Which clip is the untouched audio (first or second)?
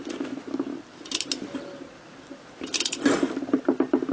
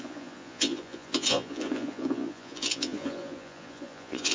first